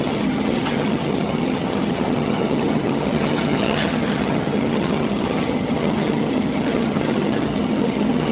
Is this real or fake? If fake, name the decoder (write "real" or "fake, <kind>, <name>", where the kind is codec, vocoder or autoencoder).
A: fake, vocoder, HiFi-GAN